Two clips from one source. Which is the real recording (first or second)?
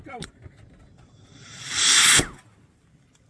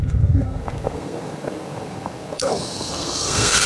first